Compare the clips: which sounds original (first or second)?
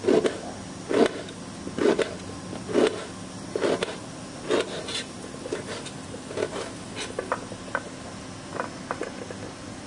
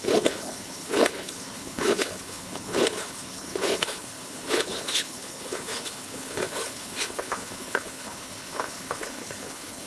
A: first